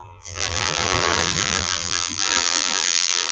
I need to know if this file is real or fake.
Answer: fake